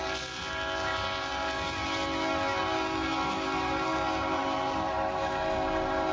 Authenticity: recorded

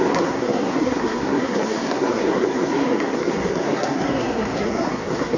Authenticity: remade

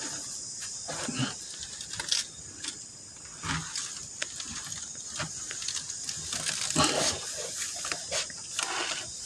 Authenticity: recorded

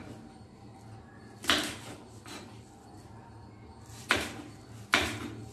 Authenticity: recorded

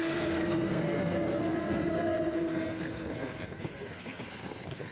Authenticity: remade